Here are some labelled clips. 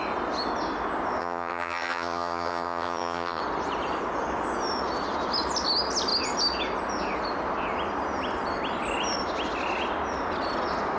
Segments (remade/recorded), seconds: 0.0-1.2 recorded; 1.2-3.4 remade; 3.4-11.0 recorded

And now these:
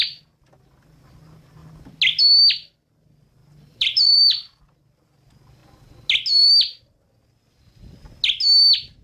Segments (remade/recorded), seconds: 0.0-3.4 recorded; 3.4-4.6 remade; 4.6-9.0 recorded

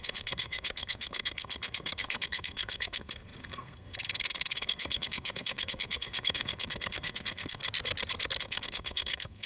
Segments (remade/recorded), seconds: 0.0-7.6 remade; 7.6-8.4 recorded; 8.4-9.5 remade

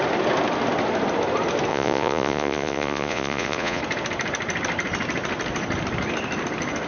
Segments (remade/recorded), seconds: 0.0-1.7 recorded; 1.7-3.8 remade; 3.8-6.9 recorded

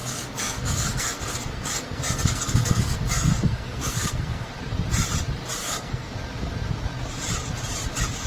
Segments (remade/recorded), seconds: 0.0-4.5 remade; 4.5-5.6 recorded; 5.6-6.1 remade; 6.1-8.3 recorded